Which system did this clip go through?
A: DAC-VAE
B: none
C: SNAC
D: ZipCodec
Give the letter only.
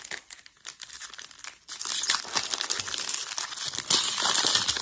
B